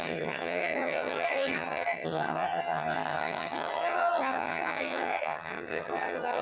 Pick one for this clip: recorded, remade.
remade